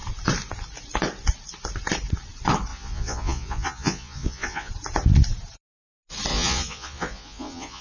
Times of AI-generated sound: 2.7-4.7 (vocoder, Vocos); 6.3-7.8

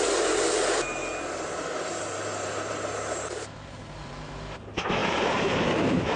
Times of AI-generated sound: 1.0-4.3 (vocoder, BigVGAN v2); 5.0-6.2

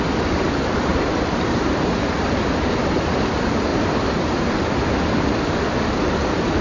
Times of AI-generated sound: 0.9-2.3 (vocoder, BigVGAN v2); 3.7-4.7

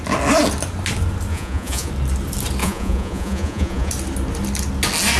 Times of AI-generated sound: 1.3-1.9 (vocoder, Vocos); 2.6-3.9